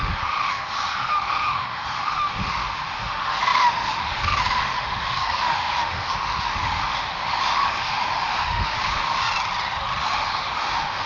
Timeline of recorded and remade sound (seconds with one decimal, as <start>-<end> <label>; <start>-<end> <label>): 0.0-9.2 remade; 9.2-10.0 recorded; 10.0-11.1 remade